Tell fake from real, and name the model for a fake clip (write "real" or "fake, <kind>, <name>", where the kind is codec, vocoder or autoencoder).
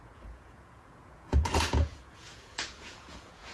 fake, vocoder, Vocos